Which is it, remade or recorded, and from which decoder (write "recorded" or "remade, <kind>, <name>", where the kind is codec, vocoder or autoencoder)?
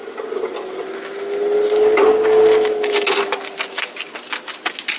recorded